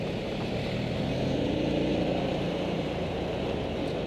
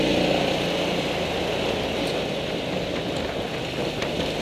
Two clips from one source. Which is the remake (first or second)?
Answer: first